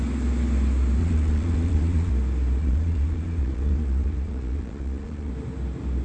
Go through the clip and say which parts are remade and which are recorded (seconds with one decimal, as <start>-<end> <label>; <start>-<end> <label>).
0.0-1.0 recorded; 1.0-2.1 remade; 2.1-2.6 recorded; 2.6-5.3 remade; 5.3-6.0 recorded